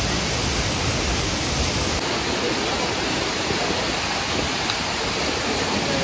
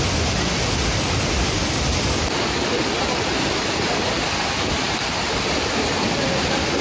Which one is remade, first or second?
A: second